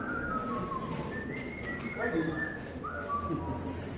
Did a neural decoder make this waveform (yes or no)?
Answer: no